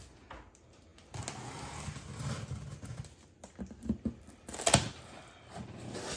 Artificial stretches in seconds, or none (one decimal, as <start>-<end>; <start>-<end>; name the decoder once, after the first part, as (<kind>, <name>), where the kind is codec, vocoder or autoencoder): none